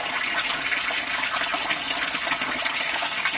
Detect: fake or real real